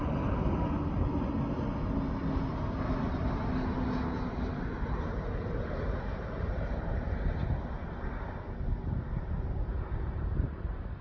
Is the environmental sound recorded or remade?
recorded